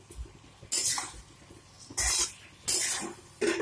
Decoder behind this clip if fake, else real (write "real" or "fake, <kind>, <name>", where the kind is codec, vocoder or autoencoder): real